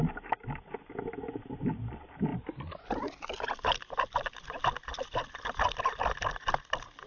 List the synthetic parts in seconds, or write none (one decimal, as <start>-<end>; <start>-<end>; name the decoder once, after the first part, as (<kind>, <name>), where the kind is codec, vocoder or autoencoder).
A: none